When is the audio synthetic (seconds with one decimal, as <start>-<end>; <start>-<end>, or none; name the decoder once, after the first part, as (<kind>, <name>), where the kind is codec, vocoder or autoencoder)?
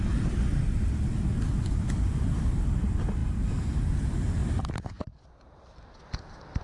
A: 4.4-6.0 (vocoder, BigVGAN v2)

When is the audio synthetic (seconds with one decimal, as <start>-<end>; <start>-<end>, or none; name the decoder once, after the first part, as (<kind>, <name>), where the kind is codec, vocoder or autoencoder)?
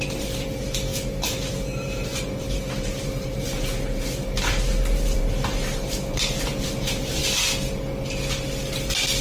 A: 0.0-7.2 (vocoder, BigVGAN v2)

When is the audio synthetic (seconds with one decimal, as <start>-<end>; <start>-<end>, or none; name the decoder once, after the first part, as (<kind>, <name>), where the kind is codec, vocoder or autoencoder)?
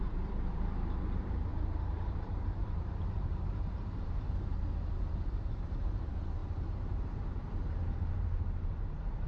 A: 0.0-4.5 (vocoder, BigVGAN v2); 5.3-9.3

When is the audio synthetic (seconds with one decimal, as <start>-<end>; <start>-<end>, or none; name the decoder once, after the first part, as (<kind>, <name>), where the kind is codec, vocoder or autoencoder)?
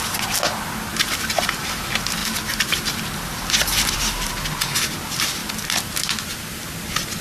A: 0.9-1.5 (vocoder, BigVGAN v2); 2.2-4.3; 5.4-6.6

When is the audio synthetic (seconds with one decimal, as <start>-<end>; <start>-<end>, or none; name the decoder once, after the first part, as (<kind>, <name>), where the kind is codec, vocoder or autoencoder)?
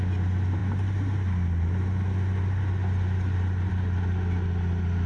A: none